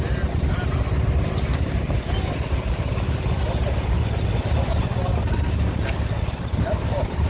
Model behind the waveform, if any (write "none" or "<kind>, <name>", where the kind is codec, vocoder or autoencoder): none